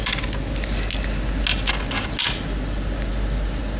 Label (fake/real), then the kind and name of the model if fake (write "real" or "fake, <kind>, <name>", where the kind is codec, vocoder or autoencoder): real